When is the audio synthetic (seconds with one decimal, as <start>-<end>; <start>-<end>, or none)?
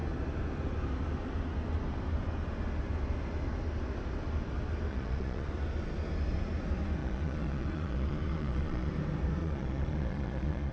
4.9-5.5; 7.0-8.9; 9.4-10.7